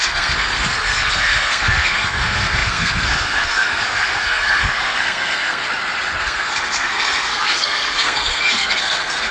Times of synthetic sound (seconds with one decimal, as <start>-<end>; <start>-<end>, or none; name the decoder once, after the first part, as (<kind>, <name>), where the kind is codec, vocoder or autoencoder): 0.0-5.6 (codec, SNAC); 6.2-9.3